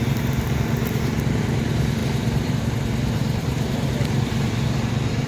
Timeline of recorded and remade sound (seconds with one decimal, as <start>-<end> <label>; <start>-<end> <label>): 0.0-2.0 recorded; 2.0-2.6 remade; 2.6-3.2 recorded; 3.2-4.6 remade; 4.6-5.3 recorded

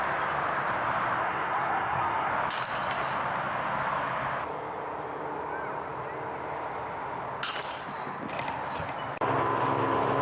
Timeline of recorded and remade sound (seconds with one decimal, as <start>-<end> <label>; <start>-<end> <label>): 0.0-1.2 recorded; 1.2-2.3 remade; 2.3-10.2 recorded

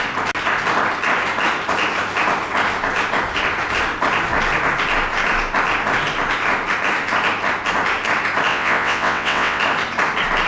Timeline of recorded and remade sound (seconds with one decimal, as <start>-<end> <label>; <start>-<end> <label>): 0.0-8.5 recorded; 8.5-9.6 remade; 9.6-10.5 recorded